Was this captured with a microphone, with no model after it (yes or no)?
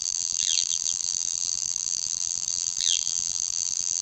no